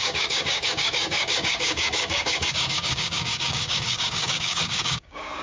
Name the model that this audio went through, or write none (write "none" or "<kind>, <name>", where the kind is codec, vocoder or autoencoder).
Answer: codec, DAC